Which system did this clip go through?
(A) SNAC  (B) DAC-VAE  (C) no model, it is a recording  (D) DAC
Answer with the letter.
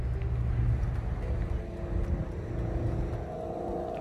C